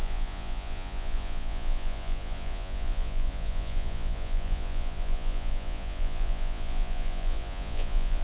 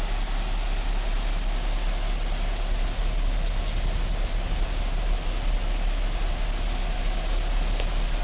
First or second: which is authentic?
second